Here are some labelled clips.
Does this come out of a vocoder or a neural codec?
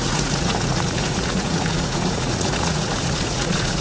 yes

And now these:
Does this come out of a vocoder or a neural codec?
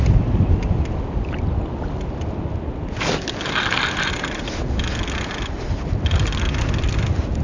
no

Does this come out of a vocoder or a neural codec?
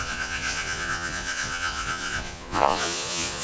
yes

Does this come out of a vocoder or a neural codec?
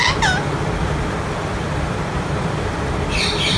no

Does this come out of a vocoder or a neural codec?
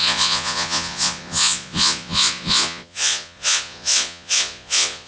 yes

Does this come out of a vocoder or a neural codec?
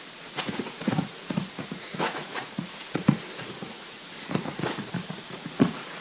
yes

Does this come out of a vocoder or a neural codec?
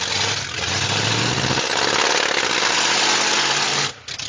no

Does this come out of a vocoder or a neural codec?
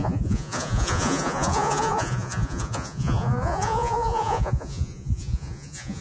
yes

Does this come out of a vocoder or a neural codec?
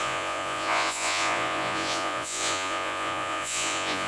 yes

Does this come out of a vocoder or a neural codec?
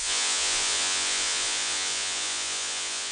yes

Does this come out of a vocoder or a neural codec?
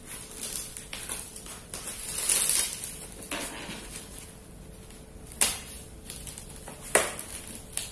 no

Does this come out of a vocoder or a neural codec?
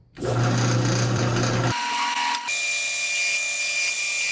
no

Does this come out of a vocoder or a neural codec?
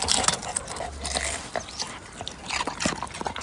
no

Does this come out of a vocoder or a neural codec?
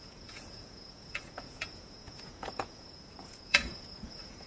yes